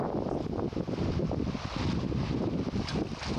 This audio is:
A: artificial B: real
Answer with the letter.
B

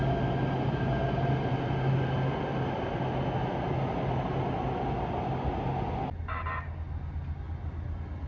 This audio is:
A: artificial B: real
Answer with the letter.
B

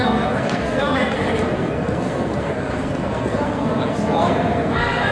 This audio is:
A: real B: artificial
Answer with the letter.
B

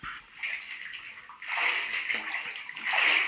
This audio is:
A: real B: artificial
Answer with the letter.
A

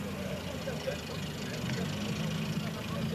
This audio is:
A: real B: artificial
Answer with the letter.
A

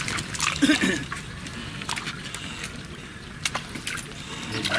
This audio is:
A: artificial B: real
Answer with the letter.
B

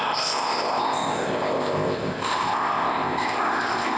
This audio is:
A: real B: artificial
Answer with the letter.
B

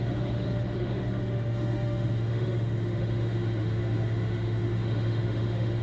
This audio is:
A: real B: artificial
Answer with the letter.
B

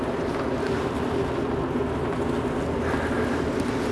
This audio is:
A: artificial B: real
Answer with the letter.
B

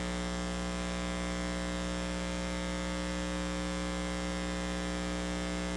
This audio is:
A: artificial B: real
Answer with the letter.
B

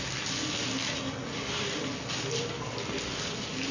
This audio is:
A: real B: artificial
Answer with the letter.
A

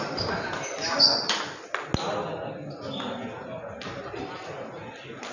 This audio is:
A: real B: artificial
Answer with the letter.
A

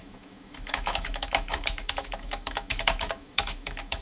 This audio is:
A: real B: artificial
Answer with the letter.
B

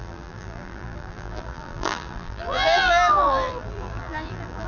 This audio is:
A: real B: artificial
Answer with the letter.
B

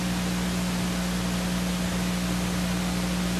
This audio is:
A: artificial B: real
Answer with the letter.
B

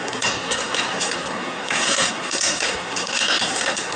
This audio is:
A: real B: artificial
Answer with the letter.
B